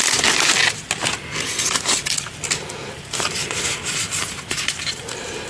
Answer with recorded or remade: recorded